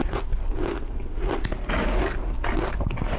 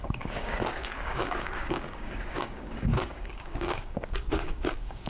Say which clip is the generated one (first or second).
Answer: second